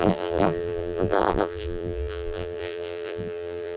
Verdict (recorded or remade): remade